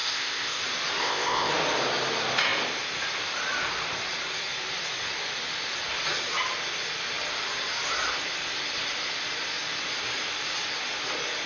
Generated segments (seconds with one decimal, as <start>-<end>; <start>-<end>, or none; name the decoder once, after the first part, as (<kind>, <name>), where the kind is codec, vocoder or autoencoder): 0.0-0.6 (codec, ZipCodec); 1.0-1.5